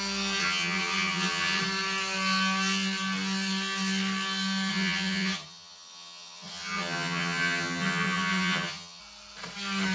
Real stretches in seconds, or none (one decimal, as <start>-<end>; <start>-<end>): 0.0-0.4; 1.6-4.7; 9.0-9.9